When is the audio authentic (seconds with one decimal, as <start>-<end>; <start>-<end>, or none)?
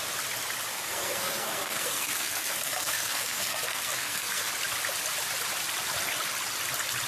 0.0-0.7; 4.5-7.1